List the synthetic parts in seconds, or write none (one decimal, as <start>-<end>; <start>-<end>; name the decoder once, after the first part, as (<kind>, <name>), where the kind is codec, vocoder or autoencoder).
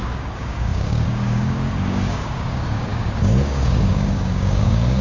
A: 0.0-5.0 (codec, DAC)